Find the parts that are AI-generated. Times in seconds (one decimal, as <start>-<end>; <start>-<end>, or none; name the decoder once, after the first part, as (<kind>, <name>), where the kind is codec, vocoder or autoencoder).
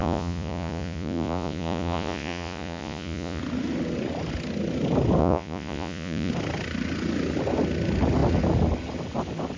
0.0-3.4 (vocoder, Vocos); 5.2-6.3